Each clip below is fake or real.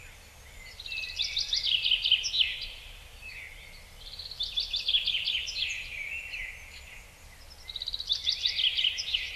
real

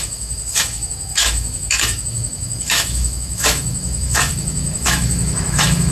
fake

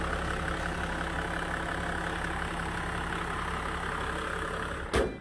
real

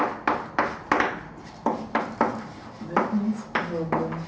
real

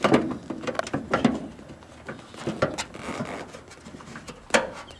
real